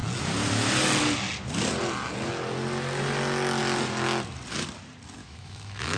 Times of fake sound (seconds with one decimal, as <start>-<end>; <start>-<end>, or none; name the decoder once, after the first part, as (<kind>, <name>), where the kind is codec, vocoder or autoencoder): 5.2-6.0 (autoencoder, DAC-VAE)